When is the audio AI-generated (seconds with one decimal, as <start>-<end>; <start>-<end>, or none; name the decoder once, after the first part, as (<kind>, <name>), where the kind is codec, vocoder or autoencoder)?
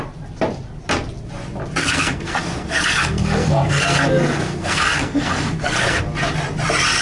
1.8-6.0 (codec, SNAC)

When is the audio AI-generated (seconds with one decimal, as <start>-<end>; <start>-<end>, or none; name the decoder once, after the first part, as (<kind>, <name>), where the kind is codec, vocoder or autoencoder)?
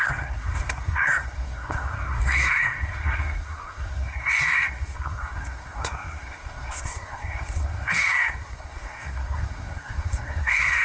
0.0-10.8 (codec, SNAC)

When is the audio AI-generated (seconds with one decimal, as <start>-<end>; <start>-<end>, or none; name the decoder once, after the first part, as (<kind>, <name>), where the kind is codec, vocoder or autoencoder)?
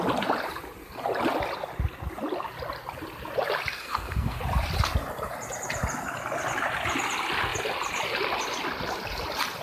3.7-4.4 (codec, SNAC)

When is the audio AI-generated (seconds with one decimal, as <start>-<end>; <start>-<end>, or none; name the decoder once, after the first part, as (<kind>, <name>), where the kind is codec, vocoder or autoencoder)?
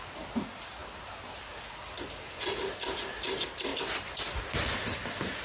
none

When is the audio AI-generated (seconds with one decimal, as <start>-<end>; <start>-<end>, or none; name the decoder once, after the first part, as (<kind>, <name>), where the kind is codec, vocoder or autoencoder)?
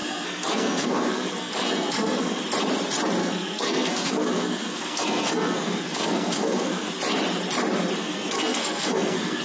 0.0-2.4 (codec, SNAC); 3.2-6.9; 8.0-9.4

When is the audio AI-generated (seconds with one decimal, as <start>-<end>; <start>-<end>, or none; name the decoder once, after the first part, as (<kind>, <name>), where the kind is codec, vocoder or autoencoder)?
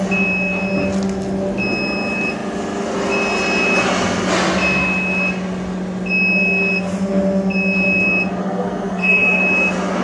8.4-9.4 (codec, SNAC)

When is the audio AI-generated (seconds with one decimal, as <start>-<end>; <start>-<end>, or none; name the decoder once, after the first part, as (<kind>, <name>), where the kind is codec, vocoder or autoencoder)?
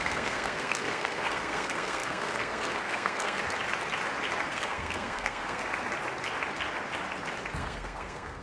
0.0-3.4 (codec, SNAC); 4.5-5.6; 7.6-8.4